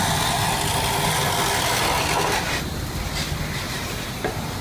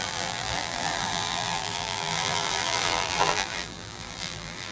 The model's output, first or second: second